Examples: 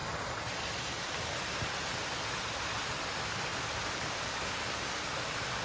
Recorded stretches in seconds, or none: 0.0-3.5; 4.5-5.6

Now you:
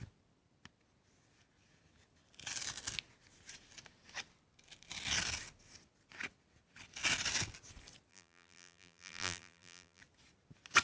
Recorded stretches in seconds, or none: 0.0-8.1; 10.0-10.8

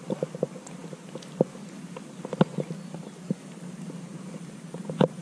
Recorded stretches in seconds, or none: 0.0-5.2

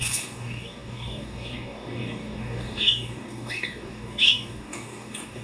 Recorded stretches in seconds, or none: none